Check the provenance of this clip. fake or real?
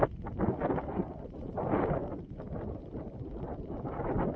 real